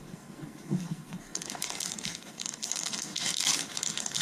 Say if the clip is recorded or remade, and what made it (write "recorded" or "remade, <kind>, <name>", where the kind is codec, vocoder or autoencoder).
remade, codec, SNAC